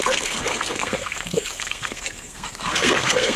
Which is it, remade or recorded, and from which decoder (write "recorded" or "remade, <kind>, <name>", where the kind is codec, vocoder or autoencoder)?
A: remade, codec, SNAC